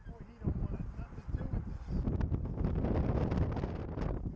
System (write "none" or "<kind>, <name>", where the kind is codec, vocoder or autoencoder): none